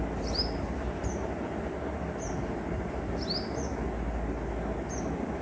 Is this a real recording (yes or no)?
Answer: yes